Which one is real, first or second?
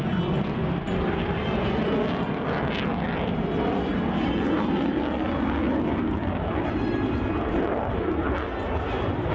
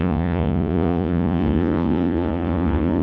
first